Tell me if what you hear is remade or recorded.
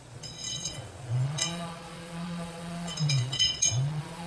remade